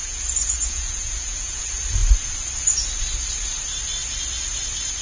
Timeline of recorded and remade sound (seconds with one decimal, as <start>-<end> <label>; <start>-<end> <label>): 0.0-1.6 remade; 1.6-5.0 recorded